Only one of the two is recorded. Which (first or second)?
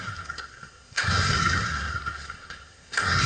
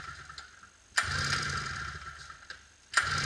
second